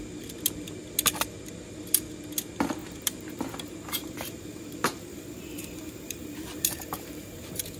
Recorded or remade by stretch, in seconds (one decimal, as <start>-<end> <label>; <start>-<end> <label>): 0.0-2.8 recorded; 2.8-7.8 remade